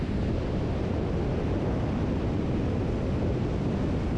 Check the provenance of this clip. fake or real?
real